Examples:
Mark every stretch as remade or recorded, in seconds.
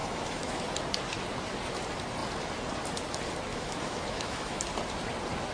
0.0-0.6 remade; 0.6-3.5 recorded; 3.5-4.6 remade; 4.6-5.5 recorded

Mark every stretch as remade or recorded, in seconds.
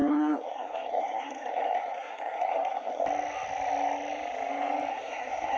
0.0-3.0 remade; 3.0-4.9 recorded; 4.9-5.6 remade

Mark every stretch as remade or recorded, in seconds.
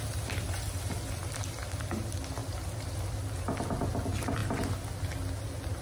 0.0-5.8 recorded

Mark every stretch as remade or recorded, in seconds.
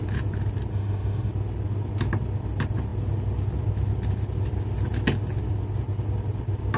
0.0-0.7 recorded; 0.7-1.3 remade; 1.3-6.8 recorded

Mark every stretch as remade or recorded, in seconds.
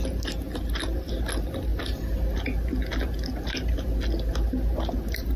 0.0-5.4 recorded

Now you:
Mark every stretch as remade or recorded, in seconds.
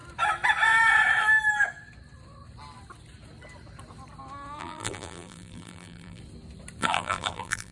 0.0-4.6 recorded; 4.6-6.2 remade; 6.2-6.8 recorded; 6.8-7.7 remade